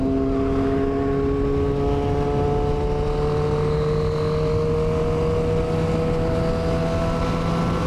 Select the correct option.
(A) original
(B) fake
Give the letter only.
A